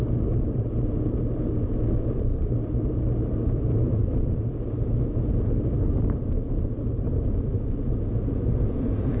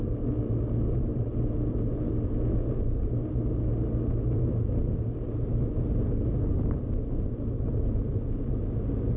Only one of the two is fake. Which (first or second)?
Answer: first